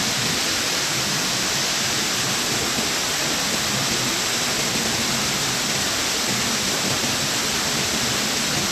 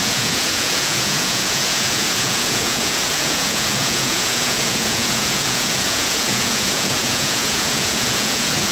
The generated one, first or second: second